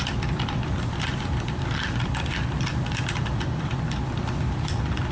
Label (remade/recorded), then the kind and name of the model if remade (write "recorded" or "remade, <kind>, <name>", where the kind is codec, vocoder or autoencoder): remade, vocoder, BigVGAN v2